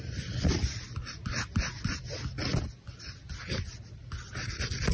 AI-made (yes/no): no